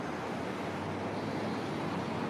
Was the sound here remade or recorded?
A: recorded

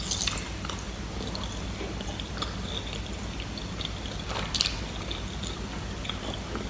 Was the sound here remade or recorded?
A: recorded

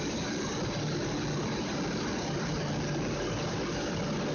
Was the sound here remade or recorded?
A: recorded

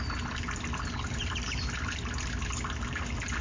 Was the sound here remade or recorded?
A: recorded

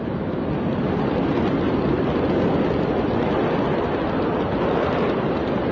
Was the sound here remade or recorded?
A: recorded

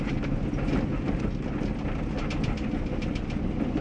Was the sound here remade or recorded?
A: recorded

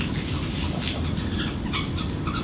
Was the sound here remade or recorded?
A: recorded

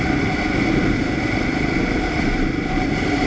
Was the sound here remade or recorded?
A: recorded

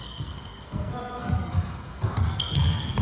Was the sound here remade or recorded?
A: remade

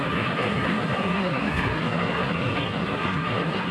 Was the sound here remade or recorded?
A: remade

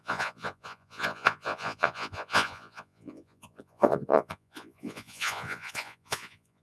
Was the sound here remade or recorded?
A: remade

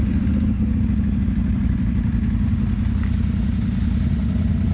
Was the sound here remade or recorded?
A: recorded